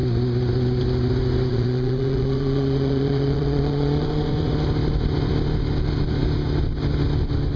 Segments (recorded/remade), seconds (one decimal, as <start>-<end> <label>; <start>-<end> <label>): 0.0-1.5 recorded; 1.5-4.5 remade; 4.5-7.6 recorded